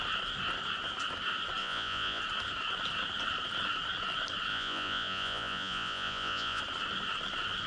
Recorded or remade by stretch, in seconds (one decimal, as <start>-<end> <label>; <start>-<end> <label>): 0.0-1.6 recorded; 1.6-2.2 remade; 2.2-4.5 recorded; 4.5-6.6 remade; 6.6-7.7 recorded